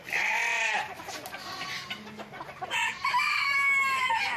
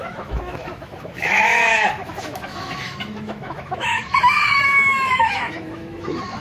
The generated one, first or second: second